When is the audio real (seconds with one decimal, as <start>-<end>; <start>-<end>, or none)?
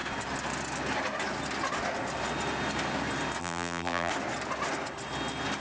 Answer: 0.0-3.4; 4.1-5.6